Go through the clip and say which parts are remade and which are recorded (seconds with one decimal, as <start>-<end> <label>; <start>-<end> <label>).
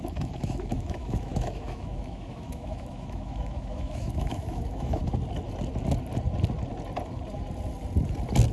0.0-5.0 remade; 5.0-8.5 recorded